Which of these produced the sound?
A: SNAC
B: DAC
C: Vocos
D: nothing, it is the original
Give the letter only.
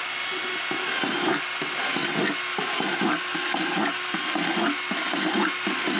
D